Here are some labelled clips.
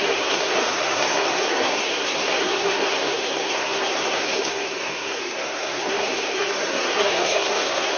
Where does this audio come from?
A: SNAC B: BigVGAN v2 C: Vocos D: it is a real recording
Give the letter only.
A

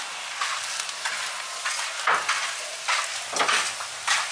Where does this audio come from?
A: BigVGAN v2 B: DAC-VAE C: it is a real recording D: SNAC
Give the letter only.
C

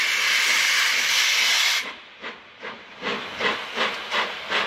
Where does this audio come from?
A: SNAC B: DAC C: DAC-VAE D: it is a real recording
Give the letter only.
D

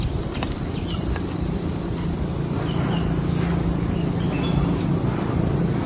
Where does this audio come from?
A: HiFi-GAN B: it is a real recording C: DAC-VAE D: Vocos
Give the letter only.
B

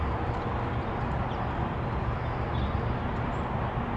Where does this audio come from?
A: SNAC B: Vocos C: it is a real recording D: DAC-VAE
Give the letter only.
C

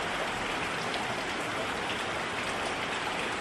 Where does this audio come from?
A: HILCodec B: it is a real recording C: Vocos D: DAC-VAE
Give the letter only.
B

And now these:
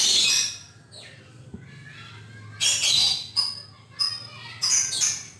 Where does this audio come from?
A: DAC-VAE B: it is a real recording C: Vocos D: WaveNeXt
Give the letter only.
B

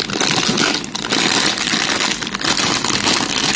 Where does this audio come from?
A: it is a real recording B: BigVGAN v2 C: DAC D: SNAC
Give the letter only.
A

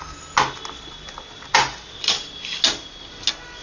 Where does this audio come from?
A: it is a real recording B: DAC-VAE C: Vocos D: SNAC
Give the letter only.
A